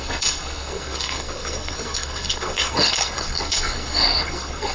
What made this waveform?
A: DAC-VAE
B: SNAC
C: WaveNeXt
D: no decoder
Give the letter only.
B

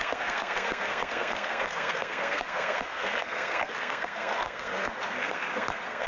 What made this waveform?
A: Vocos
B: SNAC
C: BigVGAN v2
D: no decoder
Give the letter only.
B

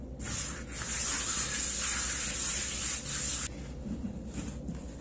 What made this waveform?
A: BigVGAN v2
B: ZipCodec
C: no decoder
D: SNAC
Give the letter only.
C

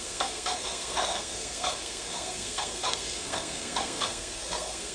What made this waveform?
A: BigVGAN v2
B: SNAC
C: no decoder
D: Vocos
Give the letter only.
B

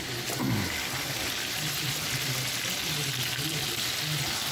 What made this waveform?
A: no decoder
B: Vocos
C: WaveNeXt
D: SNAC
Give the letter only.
A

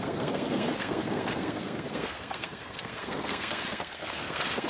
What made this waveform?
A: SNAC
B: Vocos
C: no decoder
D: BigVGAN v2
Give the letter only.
A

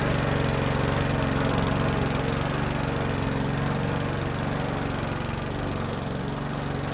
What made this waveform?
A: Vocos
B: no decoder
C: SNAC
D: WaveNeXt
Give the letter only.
B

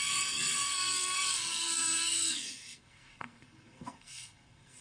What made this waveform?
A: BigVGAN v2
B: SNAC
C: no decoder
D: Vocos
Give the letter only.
B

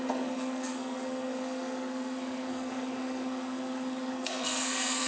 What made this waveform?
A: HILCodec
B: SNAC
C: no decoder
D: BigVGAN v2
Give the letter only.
B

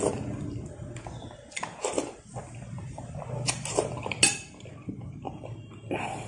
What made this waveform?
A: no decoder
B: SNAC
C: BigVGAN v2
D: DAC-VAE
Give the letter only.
A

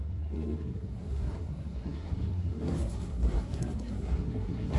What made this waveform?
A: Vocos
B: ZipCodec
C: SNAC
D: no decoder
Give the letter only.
C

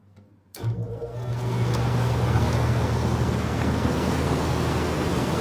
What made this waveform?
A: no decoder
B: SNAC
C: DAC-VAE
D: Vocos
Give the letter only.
B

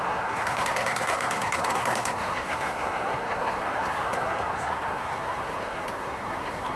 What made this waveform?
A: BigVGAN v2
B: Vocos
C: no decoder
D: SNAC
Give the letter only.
D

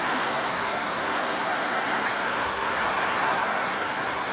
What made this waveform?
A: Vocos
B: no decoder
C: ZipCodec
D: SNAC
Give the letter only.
D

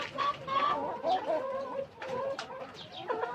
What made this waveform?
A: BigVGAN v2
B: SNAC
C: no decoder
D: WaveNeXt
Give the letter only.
C